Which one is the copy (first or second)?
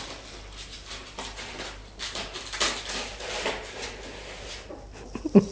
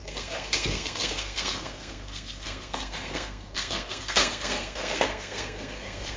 second